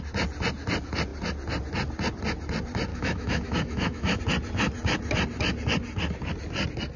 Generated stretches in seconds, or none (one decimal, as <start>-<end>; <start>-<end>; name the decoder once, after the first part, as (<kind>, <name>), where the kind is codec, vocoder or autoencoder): 2.9-4.2 (autoencoder, DAC-VAE)